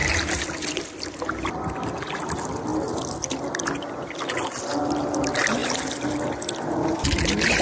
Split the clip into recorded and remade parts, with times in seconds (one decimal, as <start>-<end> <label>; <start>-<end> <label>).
0.0-7.6 recorded